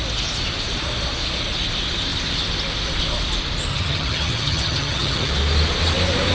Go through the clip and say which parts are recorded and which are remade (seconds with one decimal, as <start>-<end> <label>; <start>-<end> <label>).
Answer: 0.0-3.7 recorded; 3.7-5.3 remade; 5.3-6.3 recorded